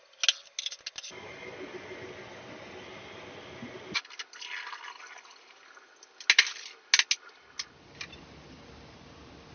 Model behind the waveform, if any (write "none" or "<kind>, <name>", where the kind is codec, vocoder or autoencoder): none